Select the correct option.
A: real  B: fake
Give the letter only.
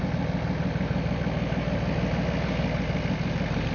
A